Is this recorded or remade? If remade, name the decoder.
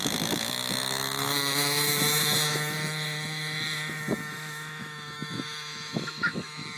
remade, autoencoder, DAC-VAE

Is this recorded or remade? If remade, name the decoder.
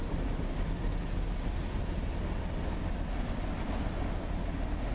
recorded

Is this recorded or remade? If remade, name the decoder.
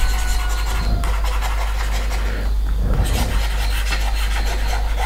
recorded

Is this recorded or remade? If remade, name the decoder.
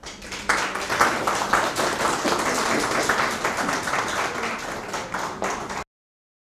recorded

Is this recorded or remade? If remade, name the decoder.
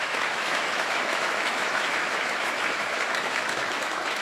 remade, autoencoder, DAC-VAE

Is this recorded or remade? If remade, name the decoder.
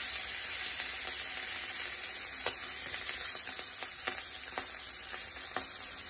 recorded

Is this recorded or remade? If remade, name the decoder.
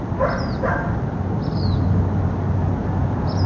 recorded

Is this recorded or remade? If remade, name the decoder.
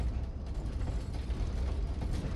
recorded